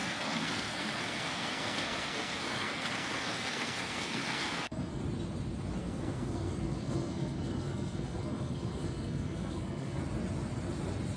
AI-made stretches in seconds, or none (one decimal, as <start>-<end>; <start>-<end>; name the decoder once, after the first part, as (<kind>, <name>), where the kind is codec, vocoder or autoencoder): 0.0-5.0 (codec, SNAC); 5.8-10.0